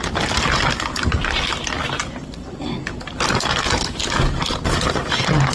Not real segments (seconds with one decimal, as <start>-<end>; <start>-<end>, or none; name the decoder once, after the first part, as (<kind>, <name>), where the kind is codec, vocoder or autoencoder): none